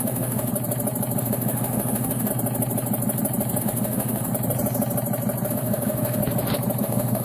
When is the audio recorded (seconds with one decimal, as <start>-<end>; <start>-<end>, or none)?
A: 0.5-1.2; 2.3-3.6; 4.3-5.5; 6.2-6.8

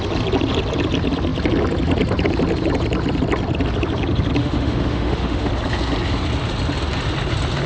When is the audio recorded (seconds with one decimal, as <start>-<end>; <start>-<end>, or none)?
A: 0.0-4.4; 5.5-7.7

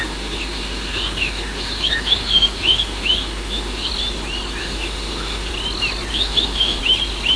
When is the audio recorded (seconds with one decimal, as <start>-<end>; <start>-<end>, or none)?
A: 3.9-4.6; 5.5-6.1; 6.8-7.4

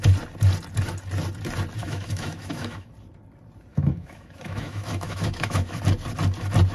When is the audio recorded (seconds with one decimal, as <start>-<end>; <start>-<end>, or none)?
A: 0.0-1.8; 2.9-3.7; 5.8-6.7

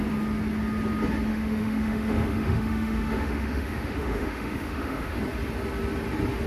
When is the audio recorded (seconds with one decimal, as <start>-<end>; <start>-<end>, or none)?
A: 0.0-1.3; 5.2-6.5

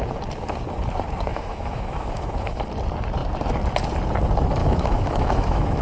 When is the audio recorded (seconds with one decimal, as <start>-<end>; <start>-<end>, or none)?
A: 0.0-1.3; 2.6-4.6